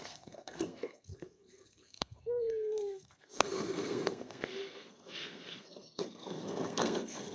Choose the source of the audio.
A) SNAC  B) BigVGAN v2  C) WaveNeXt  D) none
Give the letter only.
A